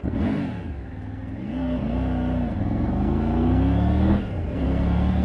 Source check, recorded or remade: remade